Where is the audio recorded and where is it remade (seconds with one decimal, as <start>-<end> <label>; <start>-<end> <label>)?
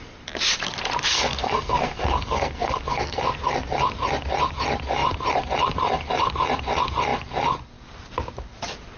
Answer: 0.0-1.1 recorded; 1.1-3.2 remade; 3.2-9.0 recorded